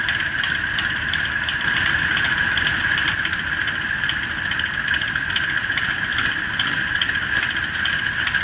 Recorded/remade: recorded